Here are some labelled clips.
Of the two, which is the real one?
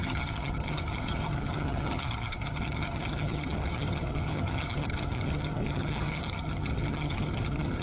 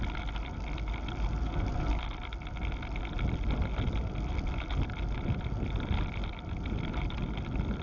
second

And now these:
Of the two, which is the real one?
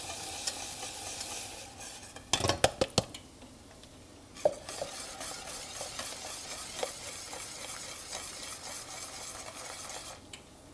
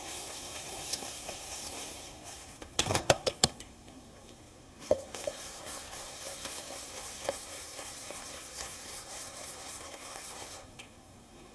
first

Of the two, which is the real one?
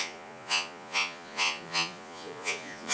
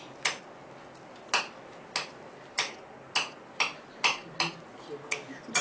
second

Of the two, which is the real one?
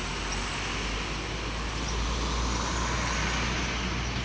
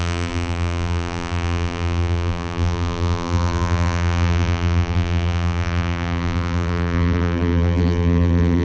first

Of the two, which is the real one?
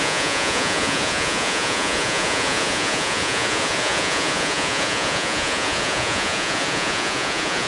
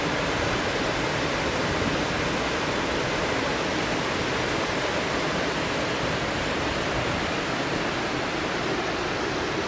second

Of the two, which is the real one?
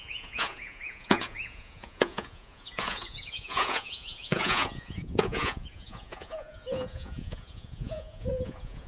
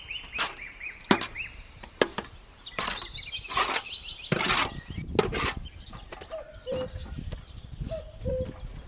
second